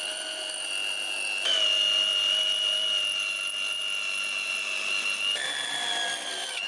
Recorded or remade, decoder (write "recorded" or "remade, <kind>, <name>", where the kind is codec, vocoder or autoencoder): recorded